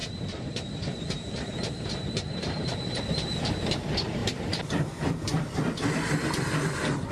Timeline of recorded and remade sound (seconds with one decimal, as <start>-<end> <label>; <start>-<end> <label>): 0.0-3.0 remade; 3.0-4.2 recorded; 4.2-5.4 remade; 5.4-7.1 recorded